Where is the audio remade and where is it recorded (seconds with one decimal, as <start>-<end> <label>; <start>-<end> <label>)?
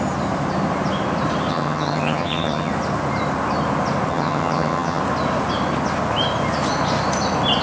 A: 0.0-1.5 recorded; 1.5-2.7 remade; 2.7-4.1 recorded; 4.1-5.0 remade; 5.0-7.6 recorded